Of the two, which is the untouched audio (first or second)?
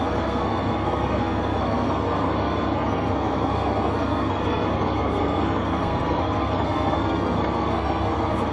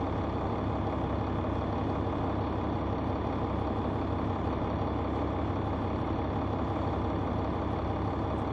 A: second